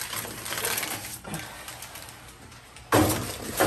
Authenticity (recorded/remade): recorded